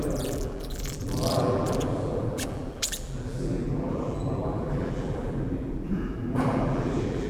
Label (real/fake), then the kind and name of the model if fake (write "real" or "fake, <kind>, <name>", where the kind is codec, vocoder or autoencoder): fake, vocoder, BigVGAN v2